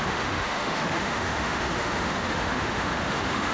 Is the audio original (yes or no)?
no